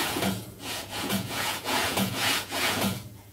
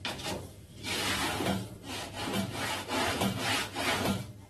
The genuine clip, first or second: second